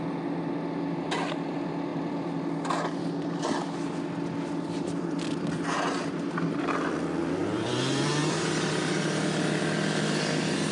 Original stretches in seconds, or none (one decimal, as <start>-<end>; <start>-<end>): 0.0-1.9; 2.4-7.2; 8.4-10.7